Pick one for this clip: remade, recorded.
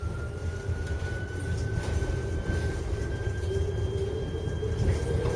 remade